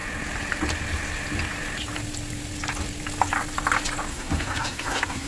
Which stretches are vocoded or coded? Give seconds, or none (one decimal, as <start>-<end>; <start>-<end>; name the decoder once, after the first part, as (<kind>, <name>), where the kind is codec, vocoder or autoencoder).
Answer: 4.1-5.3 (codec, SNAC)